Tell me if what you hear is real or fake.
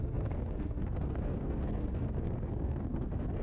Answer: fake